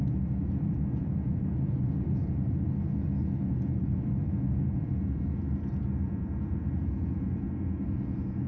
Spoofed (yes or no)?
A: yes